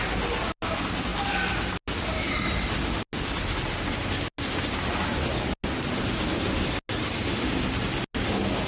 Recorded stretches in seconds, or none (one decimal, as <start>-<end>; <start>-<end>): 0.0-8.7